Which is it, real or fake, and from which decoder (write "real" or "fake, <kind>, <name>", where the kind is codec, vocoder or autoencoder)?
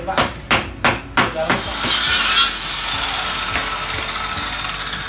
real